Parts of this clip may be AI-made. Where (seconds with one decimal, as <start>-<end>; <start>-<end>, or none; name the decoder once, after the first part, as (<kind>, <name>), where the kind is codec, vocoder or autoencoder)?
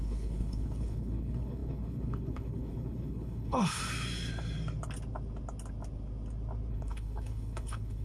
0.0-3.8 (codec, HILCodec); 6.7-8.0